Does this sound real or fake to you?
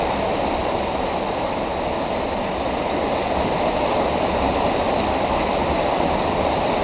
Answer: real